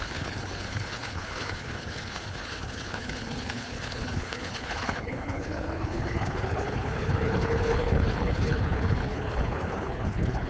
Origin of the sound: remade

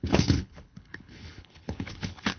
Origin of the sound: remade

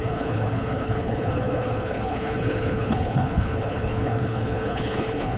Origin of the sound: remade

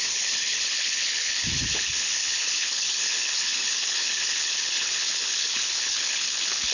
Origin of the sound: remade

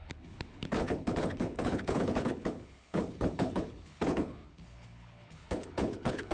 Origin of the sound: remade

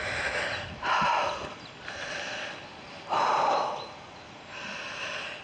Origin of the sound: recorded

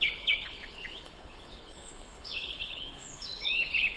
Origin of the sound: remade